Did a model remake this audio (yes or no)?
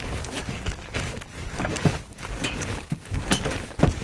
yes